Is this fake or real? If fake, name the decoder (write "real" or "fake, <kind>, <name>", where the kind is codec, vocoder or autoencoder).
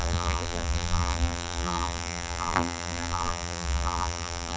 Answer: fake, vocoder, BigVGAN v2